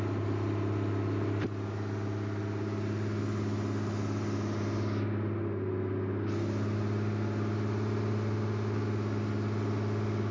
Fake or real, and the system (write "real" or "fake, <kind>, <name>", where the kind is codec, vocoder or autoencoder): real